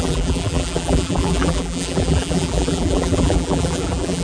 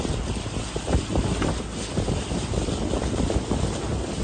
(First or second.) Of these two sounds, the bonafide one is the second